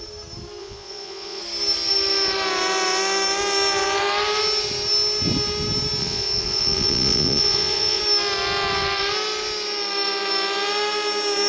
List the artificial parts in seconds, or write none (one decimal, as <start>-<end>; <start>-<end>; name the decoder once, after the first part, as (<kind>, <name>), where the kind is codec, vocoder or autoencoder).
0.6-1.4 (vocoder, Vocos); 6.0-8.0